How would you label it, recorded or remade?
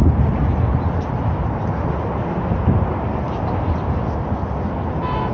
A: recorded